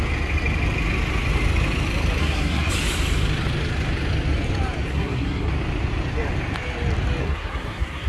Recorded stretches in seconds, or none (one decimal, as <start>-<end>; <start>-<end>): 0.0-2.2; 2.7-4.9; 5.5-7.2